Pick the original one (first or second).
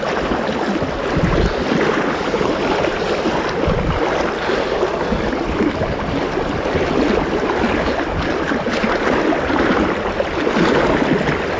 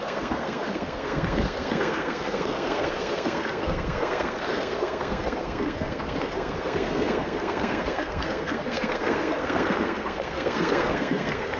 first